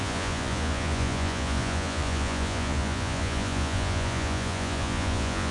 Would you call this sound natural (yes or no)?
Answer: no